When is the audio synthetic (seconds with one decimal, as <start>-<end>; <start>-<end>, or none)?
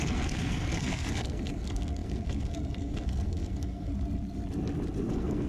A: 0.0-3.9; 5.1-5.5